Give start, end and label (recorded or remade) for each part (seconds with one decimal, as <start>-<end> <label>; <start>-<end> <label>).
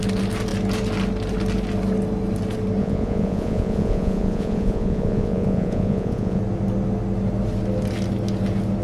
0.0-2.8 recorded; 2.8-6.4 remade; 6.4-8.8 recorded